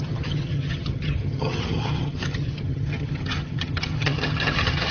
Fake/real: fake